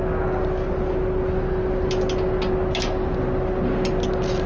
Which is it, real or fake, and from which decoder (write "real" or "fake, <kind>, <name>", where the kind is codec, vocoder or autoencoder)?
real